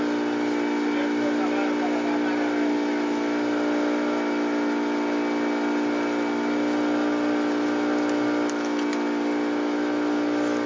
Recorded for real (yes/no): yes